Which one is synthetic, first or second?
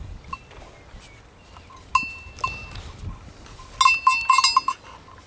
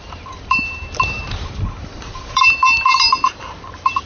second